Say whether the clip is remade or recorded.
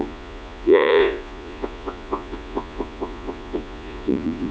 remade